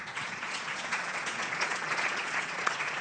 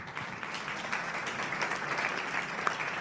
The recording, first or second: second